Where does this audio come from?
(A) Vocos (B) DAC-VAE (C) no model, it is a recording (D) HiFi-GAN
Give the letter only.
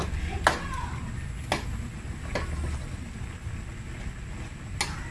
C